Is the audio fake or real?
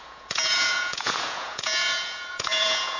fake